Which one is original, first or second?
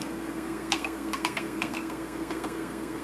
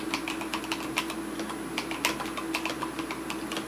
second